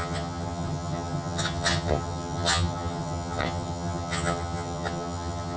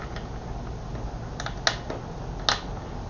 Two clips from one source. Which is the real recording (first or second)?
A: second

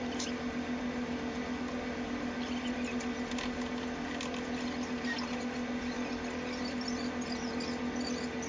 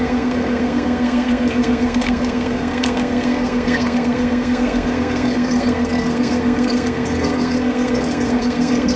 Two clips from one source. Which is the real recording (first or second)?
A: first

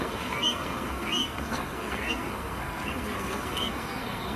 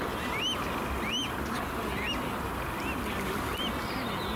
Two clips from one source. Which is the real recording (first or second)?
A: second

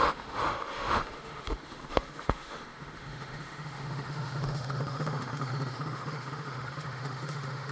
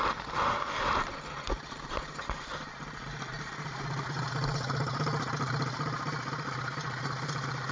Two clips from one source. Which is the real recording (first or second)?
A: second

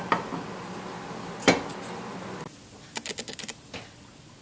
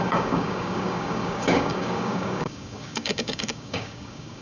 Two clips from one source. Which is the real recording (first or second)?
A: first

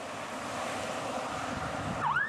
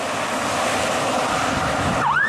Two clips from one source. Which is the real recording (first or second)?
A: second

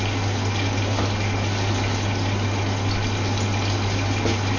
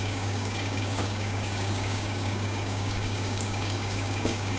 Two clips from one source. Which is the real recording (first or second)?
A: first